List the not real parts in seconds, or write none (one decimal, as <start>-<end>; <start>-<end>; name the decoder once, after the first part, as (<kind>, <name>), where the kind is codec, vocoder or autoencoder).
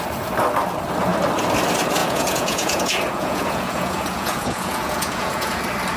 2.0-5.6 (vocoder, Vocos)